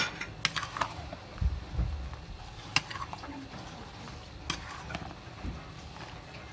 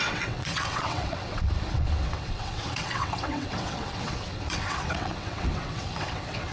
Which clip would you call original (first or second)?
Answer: first